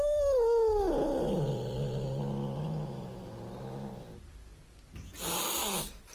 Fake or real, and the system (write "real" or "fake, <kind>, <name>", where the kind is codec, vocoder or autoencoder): real